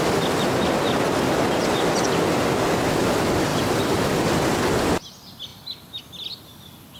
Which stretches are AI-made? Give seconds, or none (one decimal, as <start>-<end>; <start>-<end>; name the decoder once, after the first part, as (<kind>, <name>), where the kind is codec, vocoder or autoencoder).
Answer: 3.5-4.2 (vocoder, BigVGAN v2)